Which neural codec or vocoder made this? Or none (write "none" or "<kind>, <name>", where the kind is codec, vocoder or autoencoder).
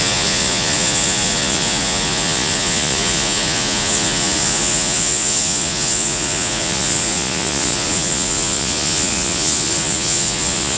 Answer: vocoder, Vocos